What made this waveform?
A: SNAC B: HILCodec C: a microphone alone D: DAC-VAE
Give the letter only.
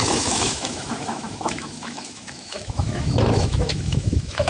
D